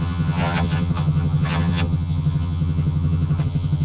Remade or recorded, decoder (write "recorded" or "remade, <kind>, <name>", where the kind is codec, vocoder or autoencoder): remade, vocoder, HiFi-GAN